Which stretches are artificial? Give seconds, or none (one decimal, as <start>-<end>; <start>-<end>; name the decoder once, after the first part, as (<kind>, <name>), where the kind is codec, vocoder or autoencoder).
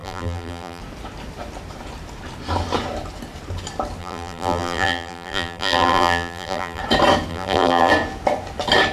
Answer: 0.0-0.8 (vocoder, BigVGAN v2); 4.0-6.8; 7.3-7.9